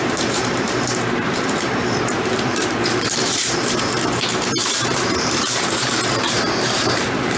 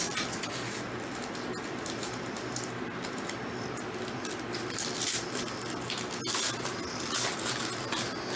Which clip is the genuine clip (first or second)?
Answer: second